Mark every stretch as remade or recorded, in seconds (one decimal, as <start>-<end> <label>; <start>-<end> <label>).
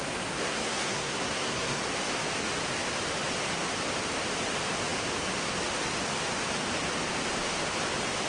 0.0-0.4 recorded; 0.4-1.8 remade; 1.8-8.3 recorded